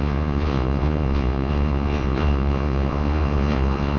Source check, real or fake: fake